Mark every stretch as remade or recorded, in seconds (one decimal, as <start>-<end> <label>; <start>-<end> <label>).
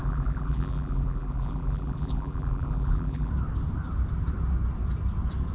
0.0-3.3 remade; 3.3-5.5 recorded